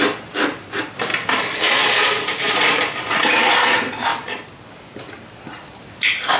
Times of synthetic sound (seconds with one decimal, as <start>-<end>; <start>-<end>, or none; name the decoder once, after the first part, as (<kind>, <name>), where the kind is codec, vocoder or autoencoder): 4.1-5.8 (vocoder, BigVGAN v2)